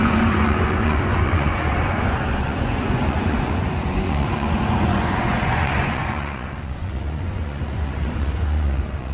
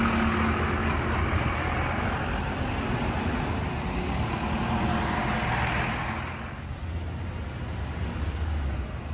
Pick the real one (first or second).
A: second